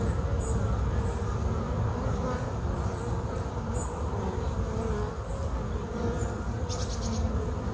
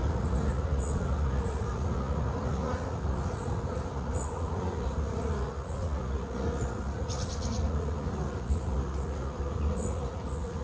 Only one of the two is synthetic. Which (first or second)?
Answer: second